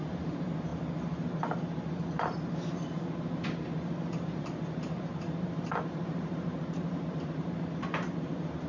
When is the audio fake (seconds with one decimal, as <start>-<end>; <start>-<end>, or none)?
0.0-0.7; 4.4-8.7